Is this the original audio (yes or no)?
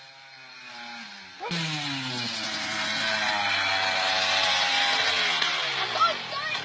yes